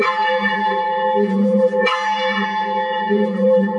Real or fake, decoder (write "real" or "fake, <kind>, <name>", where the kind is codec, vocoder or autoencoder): fake, vocoder, BigVGAN v2